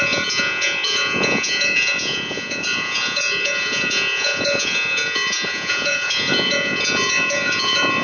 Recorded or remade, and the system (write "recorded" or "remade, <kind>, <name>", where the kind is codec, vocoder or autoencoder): remade, vocoder, Vocos